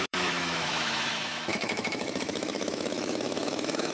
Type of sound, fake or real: fake